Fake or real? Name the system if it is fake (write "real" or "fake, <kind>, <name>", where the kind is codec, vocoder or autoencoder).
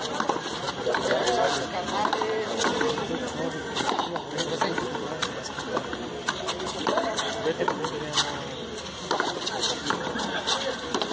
fake, vocoder, BigVGAN v2